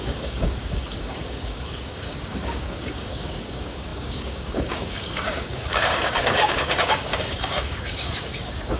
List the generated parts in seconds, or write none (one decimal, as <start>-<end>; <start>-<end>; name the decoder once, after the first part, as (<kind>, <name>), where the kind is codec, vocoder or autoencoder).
0.0-8.8 (codec, DAC)